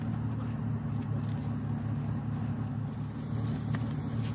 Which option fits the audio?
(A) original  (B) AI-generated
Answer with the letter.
A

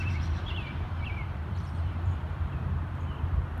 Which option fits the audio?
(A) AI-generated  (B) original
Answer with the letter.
A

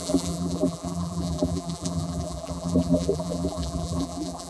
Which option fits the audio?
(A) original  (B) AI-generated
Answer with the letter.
B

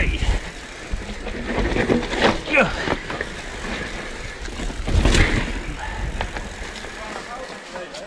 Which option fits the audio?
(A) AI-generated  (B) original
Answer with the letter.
B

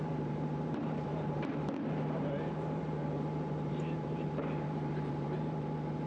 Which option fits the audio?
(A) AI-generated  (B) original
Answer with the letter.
A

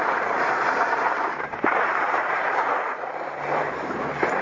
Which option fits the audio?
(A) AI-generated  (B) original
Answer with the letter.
A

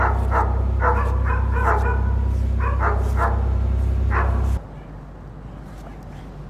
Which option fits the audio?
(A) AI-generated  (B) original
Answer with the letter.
B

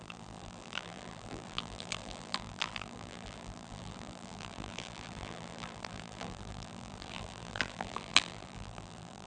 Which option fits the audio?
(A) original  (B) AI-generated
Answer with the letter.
B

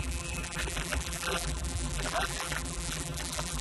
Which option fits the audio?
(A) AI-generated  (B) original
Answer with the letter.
A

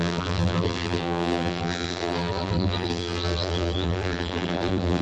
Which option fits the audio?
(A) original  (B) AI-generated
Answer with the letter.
B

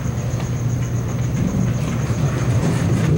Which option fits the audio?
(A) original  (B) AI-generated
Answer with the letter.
B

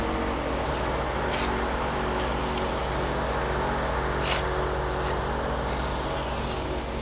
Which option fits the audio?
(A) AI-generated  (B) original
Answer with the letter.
B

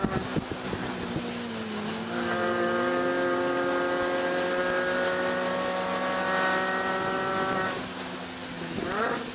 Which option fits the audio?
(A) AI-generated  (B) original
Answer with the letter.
B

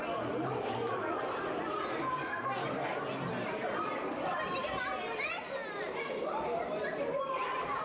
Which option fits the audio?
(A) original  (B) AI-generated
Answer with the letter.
B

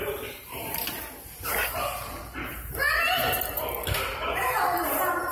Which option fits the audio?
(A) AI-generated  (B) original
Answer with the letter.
A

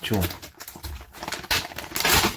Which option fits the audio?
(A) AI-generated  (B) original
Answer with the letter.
A